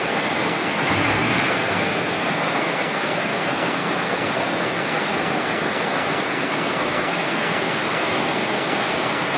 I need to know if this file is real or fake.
fake